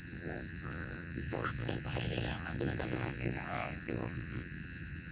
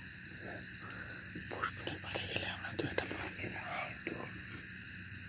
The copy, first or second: first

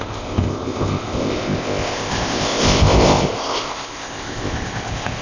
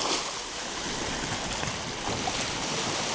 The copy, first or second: first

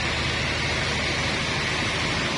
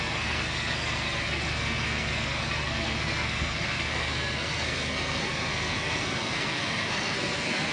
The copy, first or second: second